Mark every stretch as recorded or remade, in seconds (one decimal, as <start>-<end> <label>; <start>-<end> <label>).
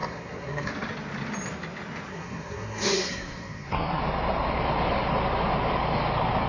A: 0.0-0.7 remade; 0.7-2.1 recorded; 2.1-4.0 remade; 4.0-6.5 recorded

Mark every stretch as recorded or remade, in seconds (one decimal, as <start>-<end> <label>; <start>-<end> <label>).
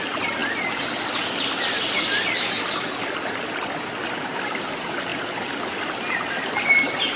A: 0.0-7.2 recorded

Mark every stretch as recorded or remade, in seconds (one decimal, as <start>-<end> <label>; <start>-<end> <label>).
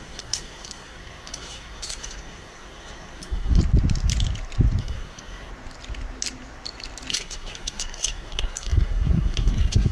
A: 0.0-3.6 remade; 3.6-4.8 recorded; 4.8-5.5 remade; 5.5-7.1 recorded; 7.1-9.9 remade